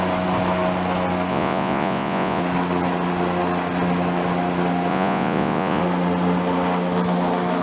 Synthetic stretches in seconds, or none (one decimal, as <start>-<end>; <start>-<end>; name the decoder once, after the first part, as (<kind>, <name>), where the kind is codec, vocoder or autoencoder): 1.3-2.4 (vocoder, Vocos); 4.9-5.8